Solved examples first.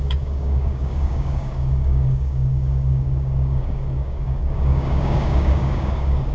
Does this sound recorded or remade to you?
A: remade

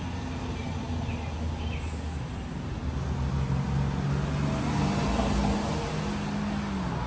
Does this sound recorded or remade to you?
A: recorded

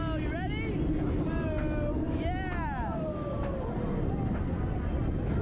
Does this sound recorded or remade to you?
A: recorded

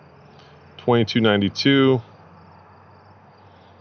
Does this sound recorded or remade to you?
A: recorded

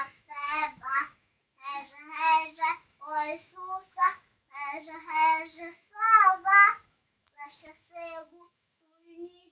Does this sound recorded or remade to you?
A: remade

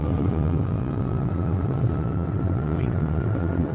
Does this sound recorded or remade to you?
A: remade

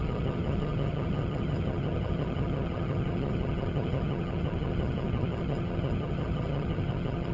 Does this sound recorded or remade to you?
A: remade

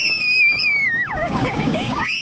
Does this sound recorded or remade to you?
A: remade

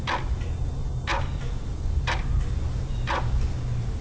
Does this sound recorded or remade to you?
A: recorded